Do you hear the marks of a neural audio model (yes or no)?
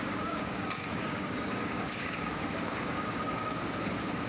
yes